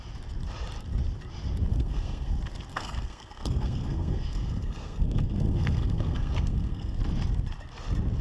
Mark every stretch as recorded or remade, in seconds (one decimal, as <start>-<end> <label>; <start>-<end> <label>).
0.0-1.7 recorded; 1.7-2.3 remade; 2.3-2.7 recorded; 2.7-7.0 remade; 7.0-8.2 recorded